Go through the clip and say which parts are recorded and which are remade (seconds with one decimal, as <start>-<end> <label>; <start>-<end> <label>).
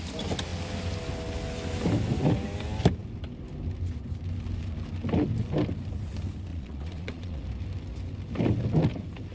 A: 0.0-6.5 recorded; 6.5-7.4 remade; 7.4-9.3 recorded